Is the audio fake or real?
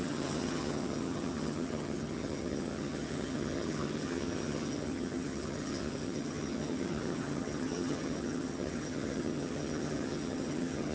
fake